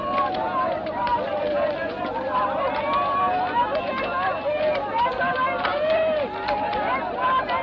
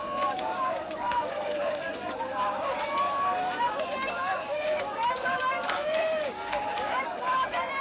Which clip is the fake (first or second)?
second